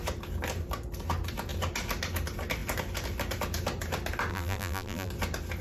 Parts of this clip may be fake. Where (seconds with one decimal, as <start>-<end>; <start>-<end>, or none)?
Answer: 4.3-5.1